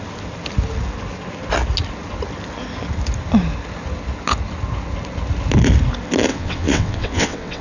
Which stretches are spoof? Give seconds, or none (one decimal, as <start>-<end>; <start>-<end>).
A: 6.3-7.6